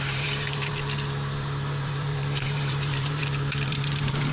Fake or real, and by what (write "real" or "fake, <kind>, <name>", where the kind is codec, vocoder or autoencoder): fake, vocoder, BigVGAN v2